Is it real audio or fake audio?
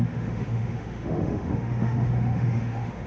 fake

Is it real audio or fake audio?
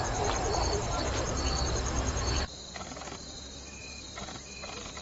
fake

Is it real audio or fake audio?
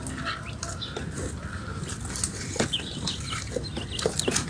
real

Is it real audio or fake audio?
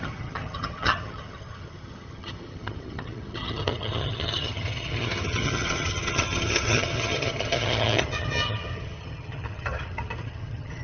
fake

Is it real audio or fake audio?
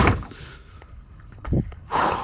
fake